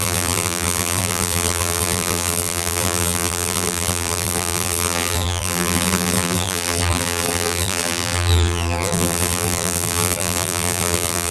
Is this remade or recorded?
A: remade